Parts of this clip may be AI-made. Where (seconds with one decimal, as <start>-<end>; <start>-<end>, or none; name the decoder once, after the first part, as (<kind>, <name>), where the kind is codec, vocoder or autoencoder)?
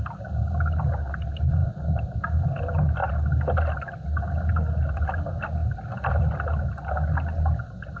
1.6-2.2 (vocoder, BigVGAN v2); 5.6-6.6